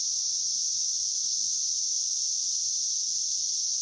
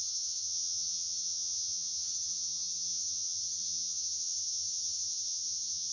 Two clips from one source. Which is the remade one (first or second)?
second